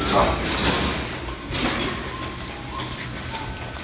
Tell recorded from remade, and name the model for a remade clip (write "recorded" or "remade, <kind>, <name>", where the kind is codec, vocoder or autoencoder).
recorded